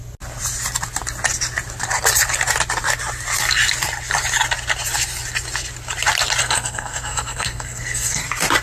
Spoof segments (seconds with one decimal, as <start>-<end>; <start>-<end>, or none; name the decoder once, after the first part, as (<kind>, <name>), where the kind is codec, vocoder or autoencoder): 6.4-8.2 (codec, SNAC)